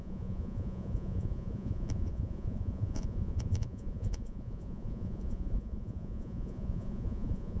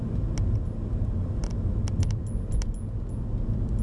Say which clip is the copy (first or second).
first